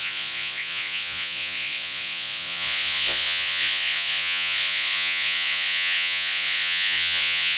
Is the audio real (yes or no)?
no